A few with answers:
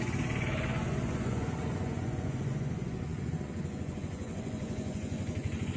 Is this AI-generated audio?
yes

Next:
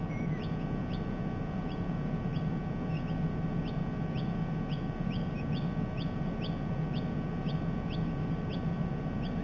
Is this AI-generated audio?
no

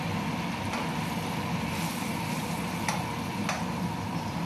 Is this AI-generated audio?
no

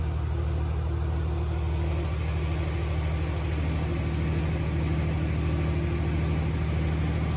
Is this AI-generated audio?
no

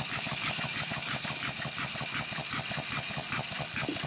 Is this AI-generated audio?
no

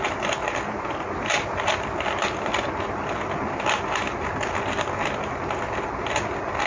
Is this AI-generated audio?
no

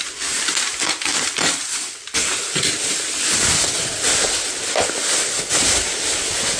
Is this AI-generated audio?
no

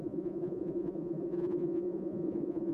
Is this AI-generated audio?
yes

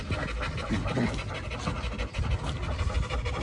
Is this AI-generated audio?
no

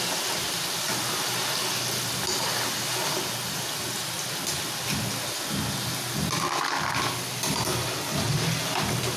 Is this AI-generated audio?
no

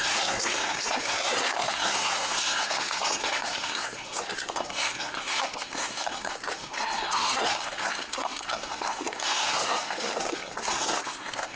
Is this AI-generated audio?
yes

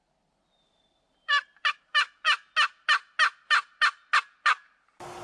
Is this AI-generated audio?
no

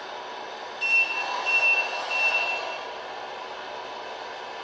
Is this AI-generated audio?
no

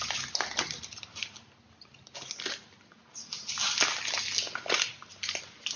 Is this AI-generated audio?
no